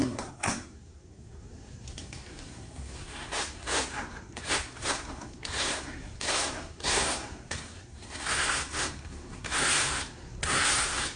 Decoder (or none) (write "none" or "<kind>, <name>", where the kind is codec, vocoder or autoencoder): codec, SNAC